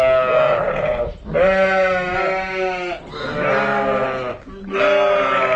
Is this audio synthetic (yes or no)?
no